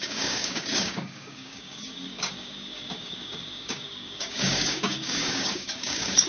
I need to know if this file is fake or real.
fake